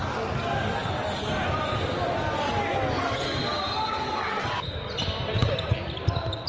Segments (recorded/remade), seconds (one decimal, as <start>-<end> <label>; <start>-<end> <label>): 0.0-6.5 recorded